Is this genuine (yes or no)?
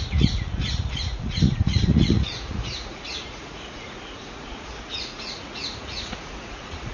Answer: no